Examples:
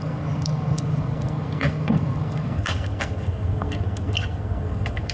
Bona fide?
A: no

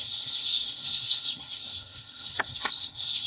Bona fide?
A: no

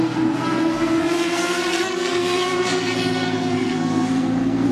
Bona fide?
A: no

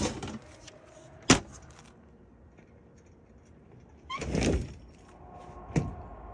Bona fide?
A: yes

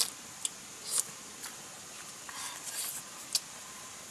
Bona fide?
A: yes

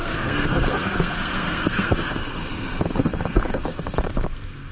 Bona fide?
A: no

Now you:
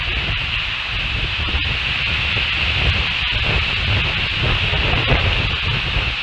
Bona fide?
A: yes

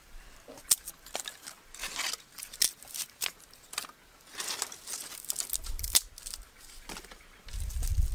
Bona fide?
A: yes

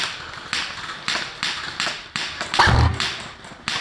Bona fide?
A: yes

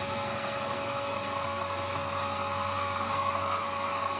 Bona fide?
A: no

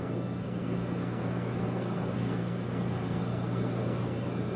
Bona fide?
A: no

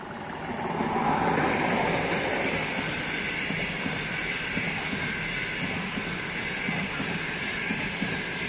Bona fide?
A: yes